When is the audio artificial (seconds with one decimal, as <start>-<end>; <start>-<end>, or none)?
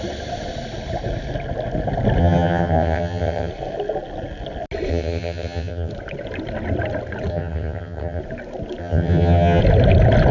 2.2-3.5; 4.9-5.9; 7.3-8.2; 8.8-9.6